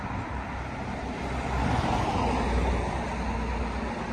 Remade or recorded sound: recorded